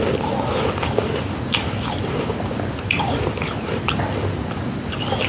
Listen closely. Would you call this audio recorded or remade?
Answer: recorded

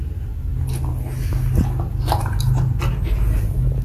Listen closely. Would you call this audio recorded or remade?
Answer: recorded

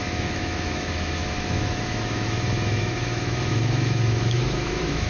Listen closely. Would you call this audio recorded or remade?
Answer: remade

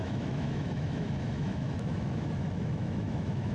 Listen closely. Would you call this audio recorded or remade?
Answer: remade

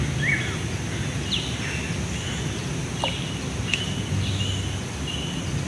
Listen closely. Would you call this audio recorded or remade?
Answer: recorded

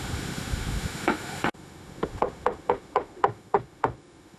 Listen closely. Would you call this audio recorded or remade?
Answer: remade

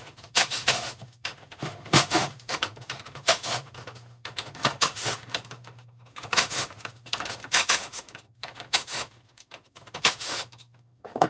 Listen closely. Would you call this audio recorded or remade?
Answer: remade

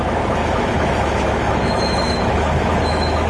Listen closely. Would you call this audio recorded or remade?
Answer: remade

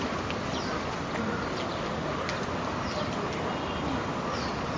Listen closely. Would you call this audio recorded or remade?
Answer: recorded